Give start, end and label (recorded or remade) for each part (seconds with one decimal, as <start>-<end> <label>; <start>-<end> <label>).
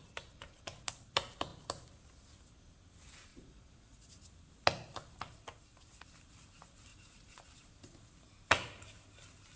0.0-3.3 recorded; 3.3-4.1 remade; 4.1-6.9 recorded; 6.9-7.4 remade; 7.4-9.6 recorded